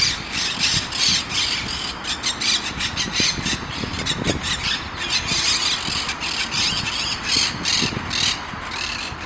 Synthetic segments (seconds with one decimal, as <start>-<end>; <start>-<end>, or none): none